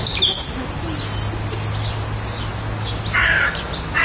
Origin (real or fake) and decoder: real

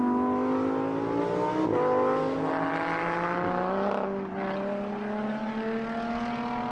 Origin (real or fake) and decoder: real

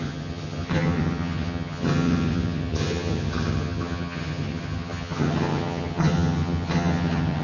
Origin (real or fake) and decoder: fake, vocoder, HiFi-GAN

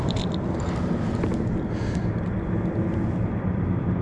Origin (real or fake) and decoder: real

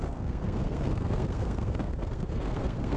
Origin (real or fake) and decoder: fake, codec, SNAC